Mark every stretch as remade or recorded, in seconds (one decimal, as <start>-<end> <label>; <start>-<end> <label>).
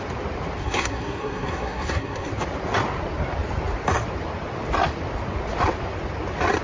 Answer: 0.0-0.6 recorded; 0.6-2.3 remade; 2.3-6.6 recorded